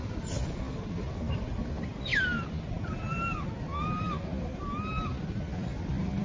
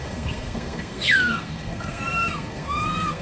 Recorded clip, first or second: first